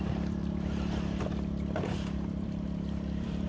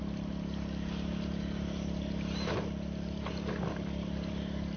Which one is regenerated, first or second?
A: first